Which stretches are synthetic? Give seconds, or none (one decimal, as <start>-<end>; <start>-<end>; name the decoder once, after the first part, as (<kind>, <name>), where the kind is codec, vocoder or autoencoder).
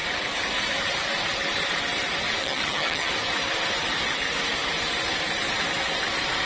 2.4-3.1 (vocoder, HiFi-GAN)